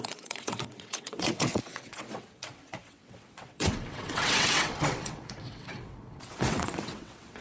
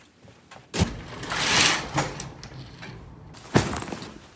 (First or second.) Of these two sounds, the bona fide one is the second